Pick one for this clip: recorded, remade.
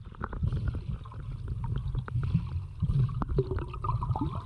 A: recorded